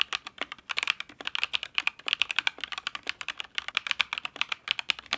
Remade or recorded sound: recorded